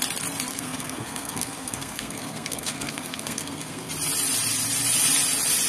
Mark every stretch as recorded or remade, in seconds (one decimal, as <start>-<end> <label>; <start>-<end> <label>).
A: 0.0-0.5 recorded; 0.5-3.9 remade; 3.9-5.7 recorded